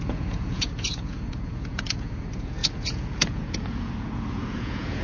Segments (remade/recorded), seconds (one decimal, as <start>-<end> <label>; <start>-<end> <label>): 0.0-5.0 remade